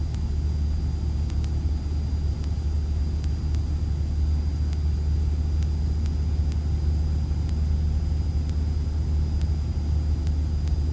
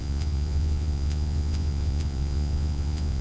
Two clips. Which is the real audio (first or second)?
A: first